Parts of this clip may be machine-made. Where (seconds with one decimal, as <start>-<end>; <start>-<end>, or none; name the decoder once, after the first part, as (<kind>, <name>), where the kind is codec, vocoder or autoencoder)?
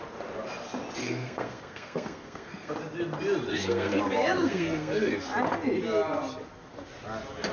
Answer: 1.0-2.7 (codec, SNAC); 3.5-4.0; 4.4-5.1